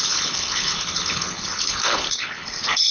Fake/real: fake